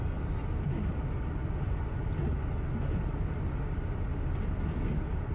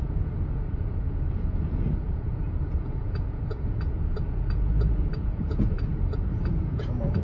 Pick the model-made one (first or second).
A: second